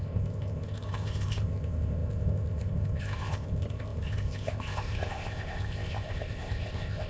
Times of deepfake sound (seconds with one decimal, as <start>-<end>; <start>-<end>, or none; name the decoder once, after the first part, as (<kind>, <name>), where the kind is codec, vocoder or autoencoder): 0.0-7.1 (codec, ZipCodec)